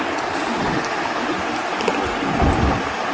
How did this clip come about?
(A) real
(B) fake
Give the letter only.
A